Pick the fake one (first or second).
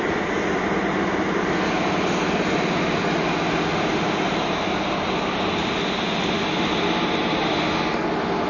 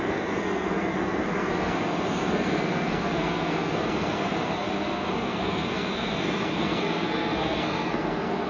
second